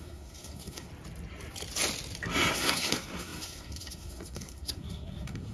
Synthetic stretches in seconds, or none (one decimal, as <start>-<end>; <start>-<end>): 0.0-0.9; 2.5-5.5